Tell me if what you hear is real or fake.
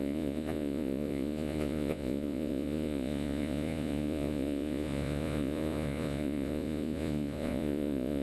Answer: fake